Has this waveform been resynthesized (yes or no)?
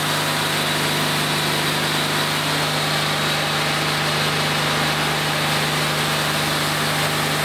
no